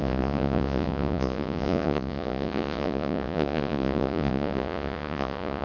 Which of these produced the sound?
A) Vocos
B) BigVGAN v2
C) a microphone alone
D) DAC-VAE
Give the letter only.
A